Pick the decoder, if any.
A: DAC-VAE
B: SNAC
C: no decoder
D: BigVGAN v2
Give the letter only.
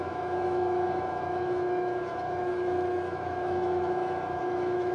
A